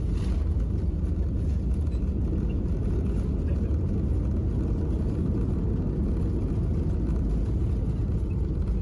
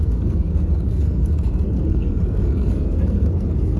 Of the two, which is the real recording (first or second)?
first